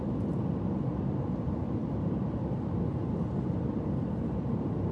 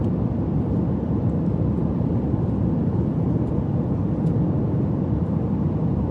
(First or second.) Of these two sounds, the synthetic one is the second